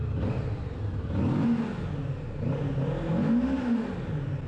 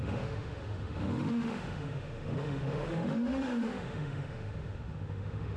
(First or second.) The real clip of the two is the first